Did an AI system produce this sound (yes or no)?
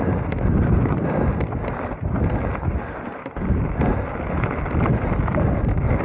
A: no